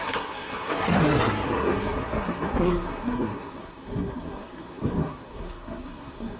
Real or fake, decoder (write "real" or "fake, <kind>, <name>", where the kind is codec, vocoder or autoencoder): fake, codec, SNAC